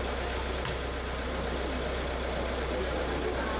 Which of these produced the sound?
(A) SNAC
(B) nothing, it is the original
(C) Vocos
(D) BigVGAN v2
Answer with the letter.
B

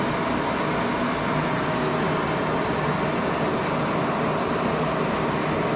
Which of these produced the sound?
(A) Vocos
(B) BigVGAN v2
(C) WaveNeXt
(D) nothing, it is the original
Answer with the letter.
D